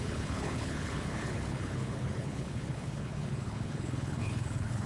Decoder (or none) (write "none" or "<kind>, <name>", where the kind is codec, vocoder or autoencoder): codec, HILCodec